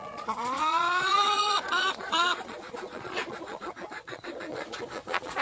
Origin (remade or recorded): remade